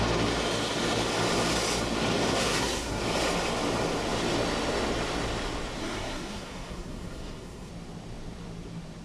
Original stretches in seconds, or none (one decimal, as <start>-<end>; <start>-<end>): 0.0-2.3; 3.0-5.8; 7.7-9.0